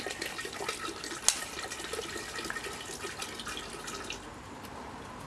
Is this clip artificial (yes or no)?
no